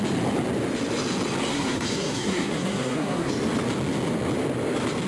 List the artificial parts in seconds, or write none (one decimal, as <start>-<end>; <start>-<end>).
1.5-3.3